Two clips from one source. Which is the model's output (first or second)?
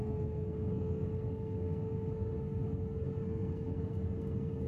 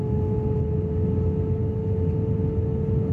first